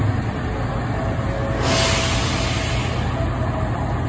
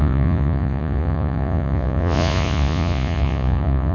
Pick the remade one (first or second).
second